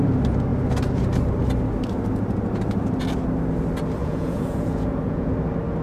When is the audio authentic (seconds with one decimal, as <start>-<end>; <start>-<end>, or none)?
0.0-4.0; 5.3-5.8